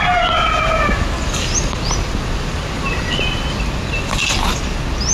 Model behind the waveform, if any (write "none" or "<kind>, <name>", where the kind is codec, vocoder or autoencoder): none